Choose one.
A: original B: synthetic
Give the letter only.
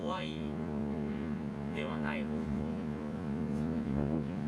B